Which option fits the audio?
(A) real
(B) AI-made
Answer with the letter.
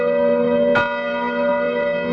A